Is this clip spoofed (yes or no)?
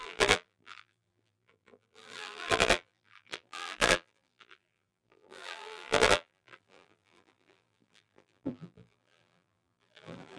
yes